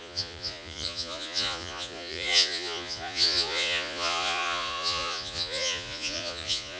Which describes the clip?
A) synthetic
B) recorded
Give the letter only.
A